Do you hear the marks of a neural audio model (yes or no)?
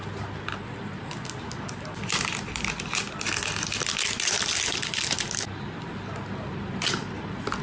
no